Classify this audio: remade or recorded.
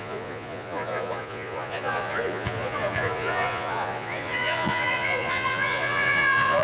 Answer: remade